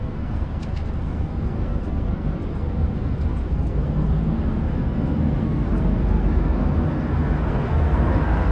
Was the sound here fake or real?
fake